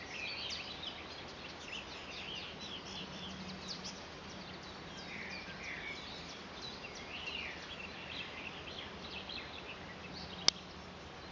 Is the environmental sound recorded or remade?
recorded